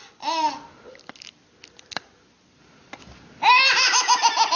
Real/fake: real